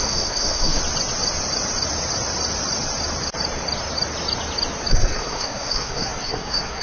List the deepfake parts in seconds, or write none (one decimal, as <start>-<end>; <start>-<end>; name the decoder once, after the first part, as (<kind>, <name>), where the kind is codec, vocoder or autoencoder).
0.0-0.8 (codec, SNAC); 4.9-6.8